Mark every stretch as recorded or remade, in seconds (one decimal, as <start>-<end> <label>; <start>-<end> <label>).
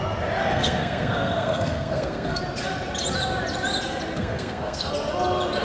0.0-0.4 recorded; 0.4-2.4 remade; 2.4-4.2 recorded; 4.2-4.9 remade; 4.9-5.6 recorded